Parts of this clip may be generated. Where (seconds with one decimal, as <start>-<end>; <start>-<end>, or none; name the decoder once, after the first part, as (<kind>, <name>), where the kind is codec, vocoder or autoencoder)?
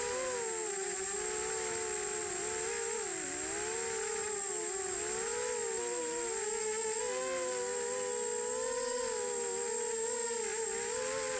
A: none